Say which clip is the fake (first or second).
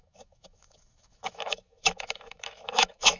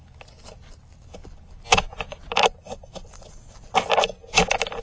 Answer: first